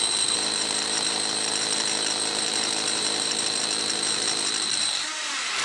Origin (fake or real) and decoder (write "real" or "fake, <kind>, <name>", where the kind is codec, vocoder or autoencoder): fake, vocoder, BigVGAN v2